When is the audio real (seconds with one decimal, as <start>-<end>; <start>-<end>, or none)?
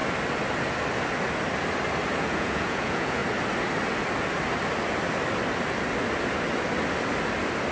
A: 0.0-2.2; 3.2-7.7